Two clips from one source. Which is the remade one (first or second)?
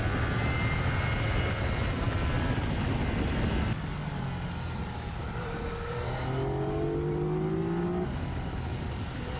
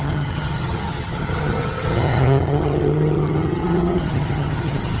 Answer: second